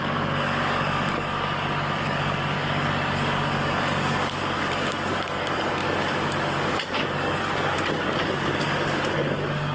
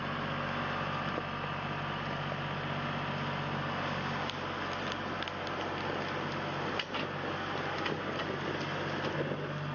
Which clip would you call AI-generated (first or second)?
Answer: first